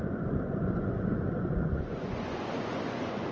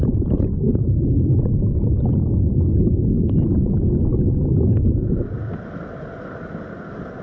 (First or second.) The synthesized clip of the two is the first